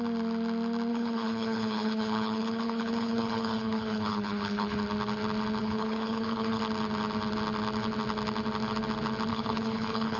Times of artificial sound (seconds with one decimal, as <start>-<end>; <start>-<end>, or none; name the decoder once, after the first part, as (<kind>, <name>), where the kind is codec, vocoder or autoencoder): 0.9-4.8 (codec, HILCodec); 5.6-6.6; 9.3-10.2